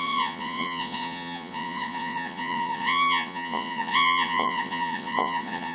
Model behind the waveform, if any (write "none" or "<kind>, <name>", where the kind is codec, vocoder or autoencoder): vocoder, Vocos